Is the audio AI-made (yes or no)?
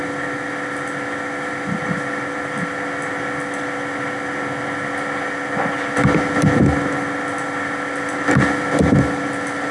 no